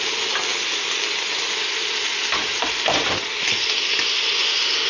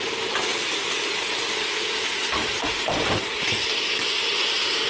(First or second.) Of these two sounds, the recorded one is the first